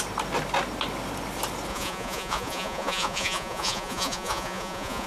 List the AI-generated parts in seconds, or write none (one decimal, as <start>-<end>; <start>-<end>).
1.7-5.1